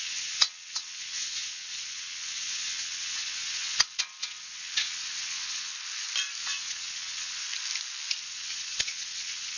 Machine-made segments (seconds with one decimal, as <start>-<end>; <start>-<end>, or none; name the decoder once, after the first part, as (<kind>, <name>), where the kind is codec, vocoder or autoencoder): 0.0-5.7 (vocoder, WaveNeXt); 6.4-7.4; 8.2-9.6